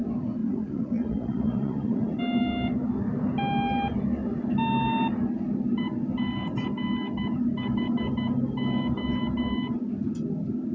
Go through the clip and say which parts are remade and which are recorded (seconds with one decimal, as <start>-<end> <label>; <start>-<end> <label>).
0.0-0.4 recorded; 0.4-2.2 remade; 2.2-10.7 recorded